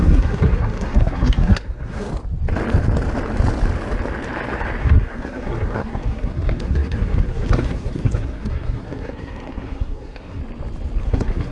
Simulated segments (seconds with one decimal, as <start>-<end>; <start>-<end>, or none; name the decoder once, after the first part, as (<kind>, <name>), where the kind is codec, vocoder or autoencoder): 0.0-2.1 (codec, SNAC); 4.8-10.4; 11.0-11.5